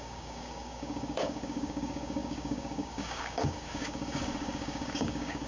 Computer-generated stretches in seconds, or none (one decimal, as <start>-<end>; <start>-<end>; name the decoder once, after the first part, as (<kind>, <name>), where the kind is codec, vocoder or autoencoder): 0.0-5.5 (codec, DAC)